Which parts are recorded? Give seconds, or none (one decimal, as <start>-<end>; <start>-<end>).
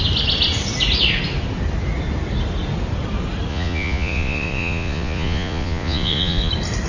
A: 0.0-3.5; 6.5-6.9